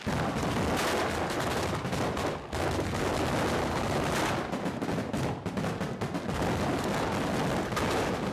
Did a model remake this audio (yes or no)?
no